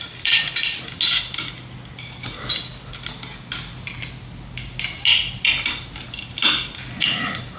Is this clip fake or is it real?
real